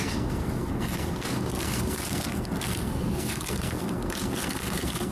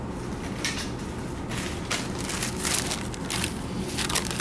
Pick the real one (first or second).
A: second